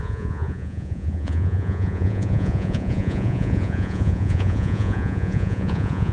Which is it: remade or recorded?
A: remade